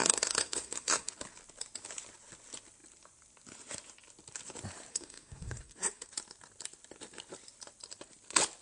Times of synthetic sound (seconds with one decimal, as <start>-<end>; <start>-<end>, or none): 0.0-1.1; 4.9-6.1